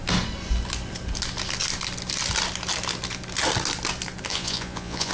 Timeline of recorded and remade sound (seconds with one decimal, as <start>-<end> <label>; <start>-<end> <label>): 0.0-4.3 recorded; 4.3-5.1 remade